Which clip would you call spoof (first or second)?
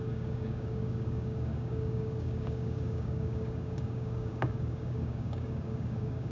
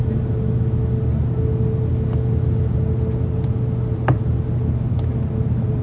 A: first